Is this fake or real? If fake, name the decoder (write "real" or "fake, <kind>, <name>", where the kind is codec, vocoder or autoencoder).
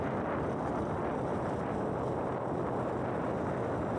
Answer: real